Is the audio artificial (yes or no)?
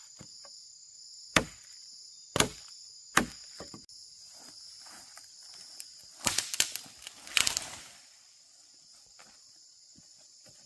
yes